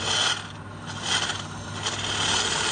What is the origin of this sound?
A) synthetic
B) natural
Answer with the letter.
B